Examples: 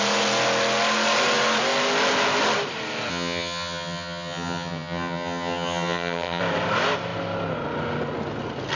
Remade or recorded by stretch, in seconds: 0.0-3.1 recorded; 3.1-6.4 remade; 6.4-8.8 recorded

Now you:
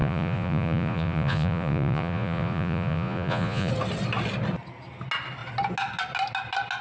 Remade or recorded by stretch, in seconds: 0.0-3.7 remade; 3.7-6.8 recorded

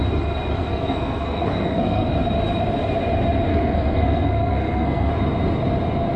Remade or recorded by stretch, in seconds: 0.0-0.6 recorded; 0.6-2.1 remade; 2.1-3.5 recorded; 3.5-5.1 remade; 5.1-6.2 recorded

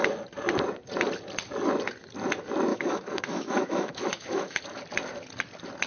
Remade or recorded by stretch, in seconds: 0.0-2.7 recorded; 2.7-4.6 remade; 4.6-5.9 recorded